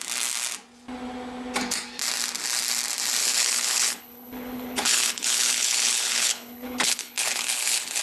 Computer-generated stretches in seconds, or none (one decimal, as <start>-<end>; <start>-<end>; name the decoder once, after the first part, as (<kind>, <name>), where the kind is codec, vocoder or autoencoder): 3.2-8.0 (codec, HILCodec)